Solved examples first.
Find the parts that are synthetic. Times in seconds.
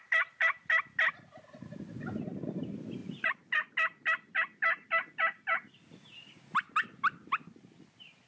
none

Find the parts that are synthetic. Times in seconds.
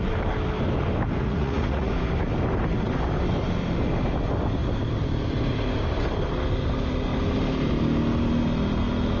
1.2-1.9 (vocoder, Vocos)